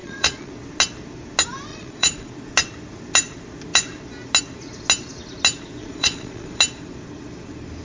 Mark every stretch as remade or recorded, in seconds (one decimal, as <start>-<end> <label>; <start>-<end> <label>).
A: 0.0-0.5 remade; 0.5-1.7 recorded; 1.7-2.3 remade; 2.3-5.8 recorded; 5.8-6.6 remade; 6.6-7.8 recorded